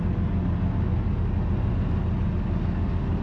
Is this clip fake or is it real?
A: real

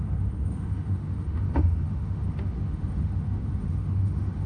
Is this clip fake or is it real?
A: fake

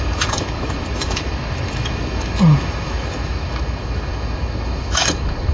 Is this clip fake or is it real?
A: fake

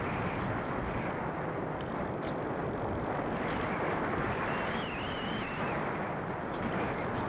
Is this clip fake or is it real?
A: real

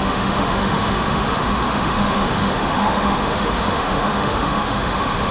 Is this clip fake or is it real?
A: fake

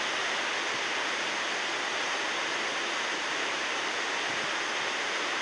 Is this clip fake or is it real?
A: real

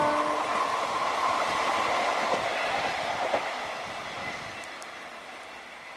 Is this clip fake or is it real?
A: real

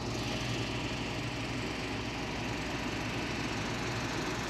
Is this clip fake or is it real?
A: real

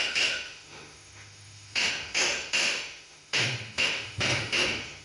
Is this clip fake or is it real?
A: fake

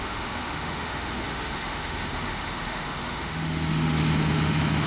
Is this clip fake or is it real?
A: fake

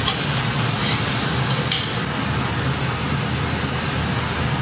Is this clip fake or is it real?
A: real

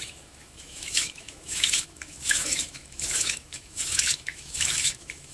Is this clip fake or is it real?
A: fake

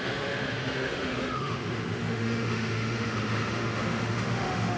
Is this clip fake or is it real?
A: fake